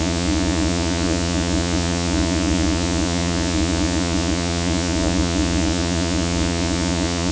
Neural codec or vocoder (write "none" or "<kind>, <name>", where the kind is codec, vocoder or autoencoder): vocoder, Vocos